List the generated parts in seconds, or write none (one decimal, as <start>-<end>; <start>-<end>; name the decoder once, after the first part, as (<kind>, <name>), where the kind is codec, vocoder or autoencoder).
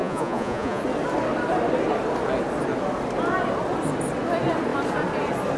0.0-0.8 (vocoder, Vocos)